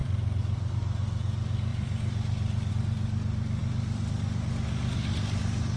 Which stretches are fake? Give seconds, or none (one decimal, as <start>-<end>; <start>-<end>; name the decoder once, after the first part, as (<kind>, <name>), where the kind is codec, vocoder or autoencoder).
0.0-0.7 (vocoder, BigVGAN v2); 1.7-2.7; 3.6-4.1

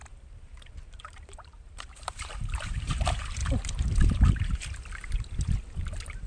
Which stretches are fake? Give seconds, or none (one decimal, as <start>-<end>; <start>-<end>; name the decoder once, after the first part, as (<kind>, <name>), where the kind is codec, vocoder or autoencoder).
0.0-3.4 (vocoder, BigVGAN v2); 4.0-4.6

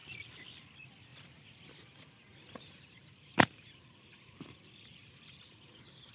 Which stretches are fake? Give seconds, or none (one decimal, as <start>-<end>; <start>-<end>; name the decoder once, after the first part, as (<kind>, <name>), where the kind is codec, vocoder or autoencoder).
0.0-0.5 (vocoder, BigVGAN v2); 2.3-6.1

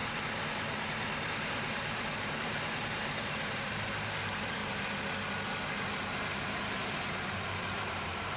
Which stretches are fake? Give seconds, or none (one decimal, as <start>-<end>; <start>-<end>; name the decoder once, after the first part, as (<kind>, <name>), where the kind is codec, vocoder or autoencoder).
1.3-4.6 (vocoder, BigVGAN v2); 6.6-8.4

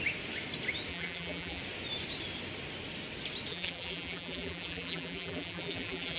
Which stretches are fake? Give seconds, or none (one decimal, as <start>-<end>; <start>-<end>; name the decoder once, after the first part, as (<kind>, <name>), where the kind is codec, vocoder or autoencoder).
0.9-1.6 (vocoder, BigVGAN v2); 3.5-6.2

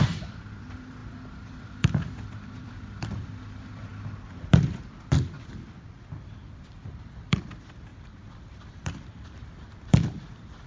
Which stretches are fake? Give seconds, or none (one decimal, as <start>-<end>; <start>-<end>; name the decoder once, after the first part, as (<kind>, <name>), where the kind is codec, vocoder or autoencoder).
0.0-3.9 (vocoder, BigVGAN v2); 6.4-10.7

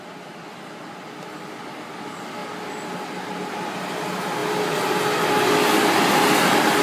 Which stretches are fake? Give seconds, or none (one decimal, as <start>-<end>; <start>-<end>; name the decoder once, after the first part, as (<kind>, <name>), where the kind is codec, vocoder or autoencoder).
none